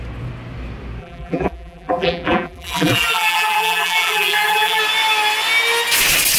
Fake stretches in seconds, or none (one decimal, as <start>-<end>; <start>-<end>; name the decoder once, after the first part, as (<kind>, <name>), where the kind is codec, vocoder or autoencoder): 1.0-4.8 (vocoder, BigVGAN v2)